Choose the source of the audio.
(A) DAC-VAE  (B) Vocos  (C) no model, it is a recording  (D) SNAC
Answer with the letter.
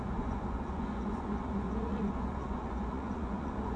B